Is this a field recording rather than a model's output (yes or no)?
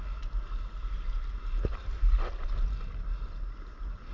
yes